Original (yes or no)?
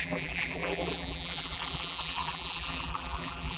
no